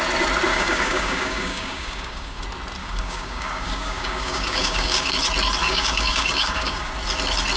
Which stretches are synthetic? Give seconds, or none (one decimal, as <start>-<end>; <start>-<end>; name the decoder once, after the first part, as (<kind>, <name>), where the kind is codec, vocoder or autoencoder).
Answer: 0.5-2.4 (codec, DAC); 2.8-5.1; 5.6-6.9